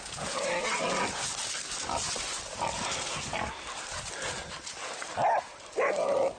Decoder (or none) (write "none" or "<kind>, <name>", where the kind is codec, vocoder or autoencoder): none